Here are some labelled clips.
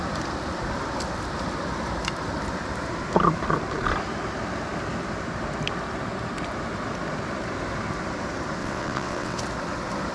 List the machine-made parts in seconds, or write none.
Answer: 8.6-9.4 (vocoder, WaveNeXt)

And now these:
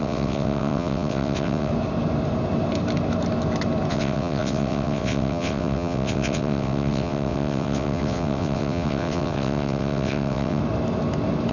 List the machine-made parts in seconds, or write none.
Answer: 0.0-1.7 (vocoder, WaveNeXt); 3.9-10.6

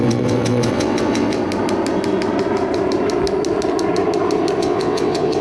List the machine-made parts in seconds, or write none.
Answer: 0.0-1.4 (vocoder, WaveNeXt); 4.6-5.4

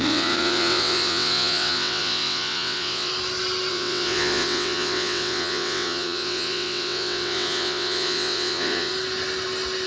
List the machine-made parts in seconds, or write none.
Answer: 0.0-3.1 (vocoder, WaveNeXt); 3.7-8.9